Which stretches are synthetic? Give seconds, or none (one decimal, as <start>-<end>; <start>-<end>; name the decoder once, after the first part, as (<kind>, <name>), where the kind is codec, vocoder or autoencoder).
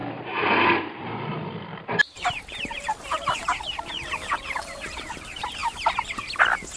0.0-5.6 (vocoder, BigVGAN v2)